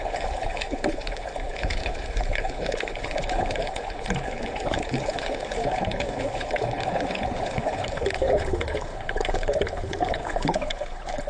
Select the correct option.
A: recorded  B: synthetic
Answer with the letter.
B